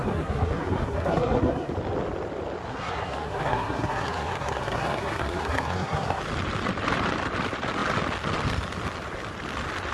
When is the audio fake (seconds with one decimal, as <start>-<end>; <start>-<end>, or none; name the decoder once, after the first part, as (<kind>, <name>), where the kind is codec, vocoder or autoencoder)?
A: 0.0-1.7 (codec, SNAC); 2.7-6.2